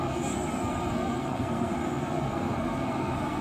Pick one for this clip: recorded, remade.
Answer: remade